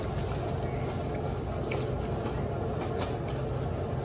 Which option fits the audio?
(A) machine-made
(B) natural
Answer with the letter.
B